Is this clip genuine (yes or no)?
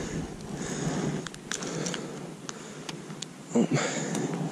yes